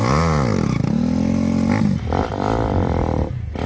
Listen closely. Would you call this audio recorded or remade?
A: recorded